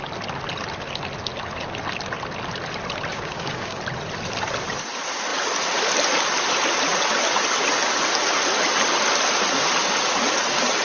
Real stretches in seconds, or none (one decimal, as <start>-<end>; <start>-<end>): 0.0-3.1; 3.8-10.8